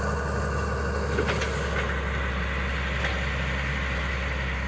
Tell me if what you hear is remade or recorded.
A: recorded